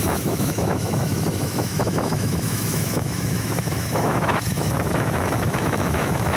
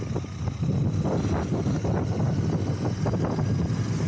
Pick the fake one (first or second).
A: first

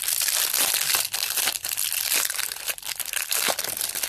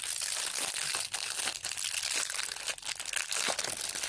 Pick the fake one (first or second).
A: first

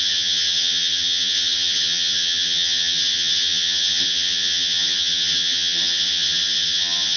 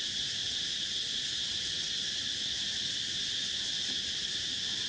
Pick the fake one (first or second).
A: first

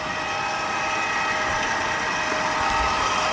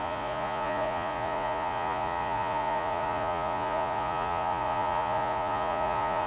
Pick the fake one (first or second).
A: second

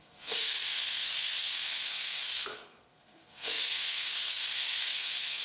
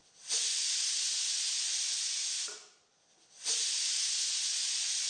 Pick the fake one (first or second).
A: first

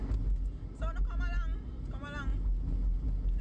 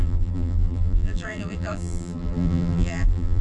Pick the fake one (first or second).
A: second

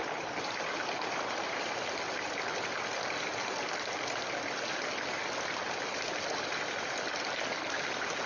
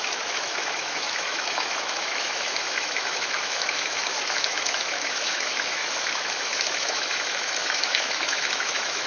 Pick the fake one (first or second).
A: second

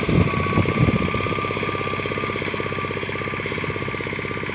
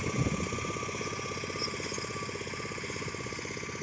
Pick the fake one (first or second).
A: second